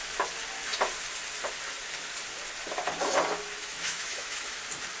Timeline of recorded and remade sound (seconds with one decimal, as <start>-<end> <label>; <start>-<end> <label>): 0.0-3.6 recorded; 3.6-4.6 remade; 4.6-5.0 recorded